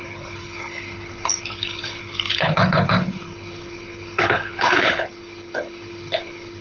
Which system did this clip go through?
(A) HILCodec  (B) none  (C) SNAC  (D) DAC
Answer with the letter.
A